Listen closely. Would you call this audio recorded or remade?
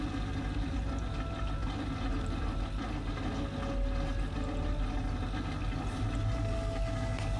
recorded